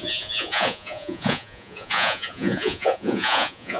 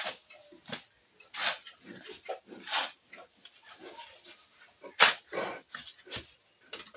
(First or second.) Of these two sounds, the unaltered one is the second